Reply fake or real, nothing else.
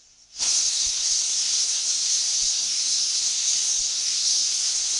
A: fake